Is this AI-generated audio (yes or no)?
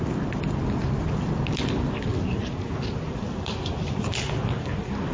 no